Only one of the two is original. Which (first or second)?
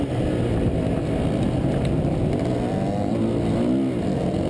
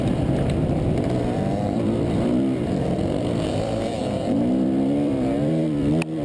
first